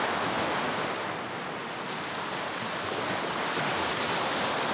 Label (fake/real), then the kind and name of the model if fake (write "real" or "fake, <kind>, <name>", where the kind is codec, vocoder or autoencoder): real